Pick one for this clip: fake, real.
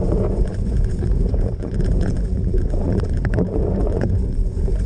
fake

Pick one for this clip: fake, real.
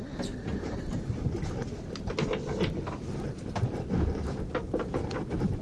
real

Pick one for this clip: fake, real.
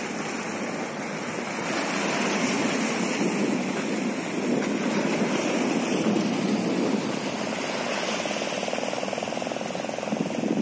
real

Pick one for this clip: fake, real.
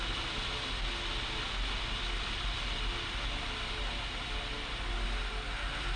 real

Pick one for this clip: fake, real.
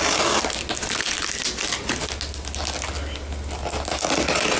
real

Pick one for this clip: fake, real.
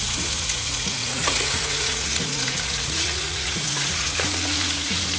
fake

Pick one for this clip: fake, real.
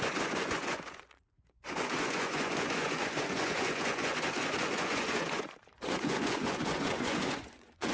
fake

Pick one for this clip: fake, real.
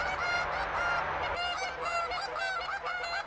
real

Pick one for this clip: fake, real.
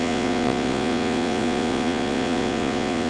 fake